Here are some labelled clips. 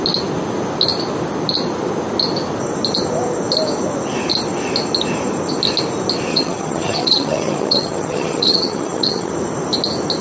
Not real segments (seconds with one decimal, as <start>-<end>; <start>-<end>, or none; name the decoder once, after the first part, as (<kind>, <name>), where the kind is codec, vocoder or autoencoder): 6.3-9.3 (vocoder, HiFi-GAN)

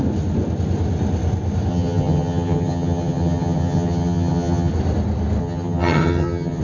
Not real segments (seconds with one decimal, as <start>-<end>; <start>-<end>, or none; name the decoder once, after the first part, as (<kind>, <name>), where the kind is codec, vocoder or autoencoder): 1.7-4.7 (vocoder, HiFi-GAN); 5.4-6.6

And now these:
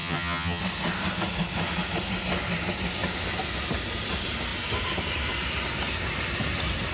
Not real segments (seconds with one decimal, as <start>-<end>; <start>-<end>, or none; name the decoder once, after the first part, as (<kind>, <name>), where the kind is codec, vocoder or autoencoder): 0.0-0.6 (vocoder, HiFi-GAN)

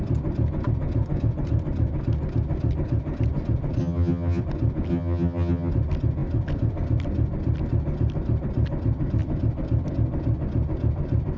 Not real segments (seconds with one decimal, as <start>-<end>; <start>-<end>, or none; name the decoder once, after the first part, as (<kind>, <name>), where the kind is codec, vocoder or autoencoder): 3.8-4.4 (vocoder, HiFi-GAN); 4.9-5.7

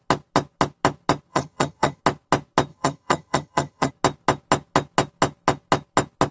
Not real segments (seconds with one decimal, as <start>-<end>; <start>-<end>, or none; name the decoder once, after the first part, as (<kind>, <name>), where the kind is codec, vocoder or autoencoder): 1.3-2.0 (vocoder, HiFi-GAN); 2.7-3.9

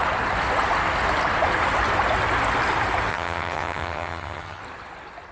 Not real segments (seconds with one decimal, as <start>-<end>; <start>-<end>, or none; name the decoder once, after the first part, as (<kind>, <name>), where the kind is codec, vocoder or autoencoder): 3.1-4.6 (vocoder, HiFi-GAN)

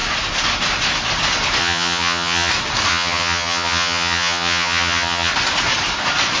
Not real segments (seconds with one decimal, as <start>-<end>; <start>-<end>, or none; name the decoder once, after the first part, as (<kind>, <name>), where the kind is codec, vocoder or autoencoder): 1.6-2.5 (vocoder, HiFi-GAN); 2.9-5.3

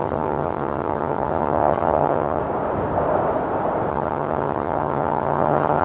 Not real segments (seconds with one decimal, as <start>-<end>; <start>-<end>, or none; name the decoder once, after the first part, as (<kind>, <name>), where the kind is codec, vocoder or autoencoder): 0.0-2.4 (vocoder, HiFi-GAN); 3.9-5.8